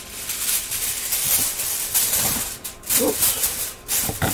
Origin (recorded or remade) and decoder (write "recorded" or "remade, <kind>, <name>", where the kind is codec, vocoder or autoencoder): remade, vocoder, BigVGAN v2